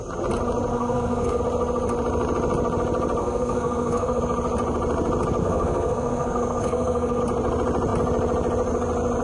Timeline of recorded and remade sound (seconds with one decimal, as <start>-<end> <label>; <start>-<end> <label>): 0.0-0.7 recorded; 0.7-1.4 remade; 1.4-3.2 recorded; 3.2-4.2 remade; 4.2-5.4 recorded; 5.4-7.2 remade; 7.2-9.2 recorded